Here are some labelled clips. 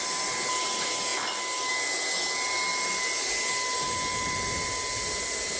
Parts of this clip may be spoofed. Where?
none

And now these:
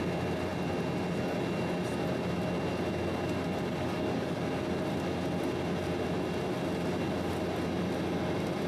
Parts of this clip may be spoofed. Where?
3.7-4.4

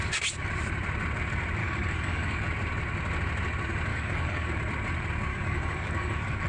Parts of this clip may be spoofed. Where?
1.6-2.4; 3.9-4.5; 5.3-6.5

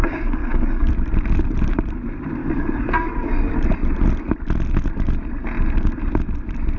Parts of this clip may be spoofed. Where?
0.0-0.9; 2.4-3.5

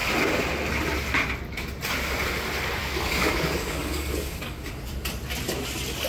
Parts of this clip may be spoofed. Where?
2.8-4.7

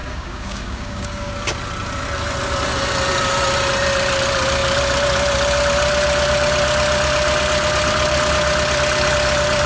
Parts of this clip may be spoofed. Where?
0.0-1.3

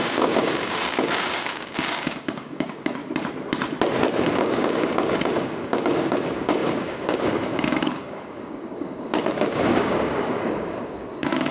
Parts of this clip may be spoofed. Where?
0.0-3.0; 4.2-11.5

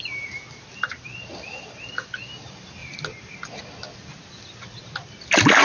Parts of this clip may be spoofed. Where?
none